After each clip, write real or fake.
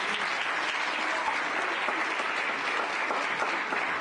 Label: real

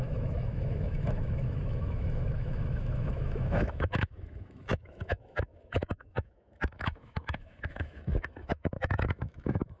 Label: fake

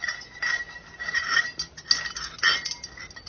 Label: real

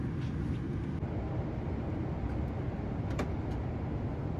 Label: real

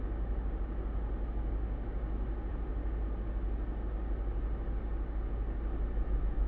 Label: real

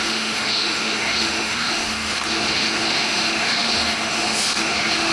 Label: fake